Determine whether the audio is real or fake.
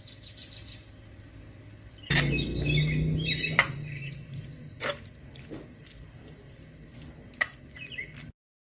real